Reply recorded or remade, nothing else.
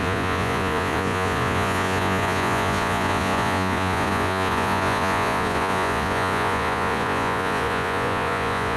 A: remade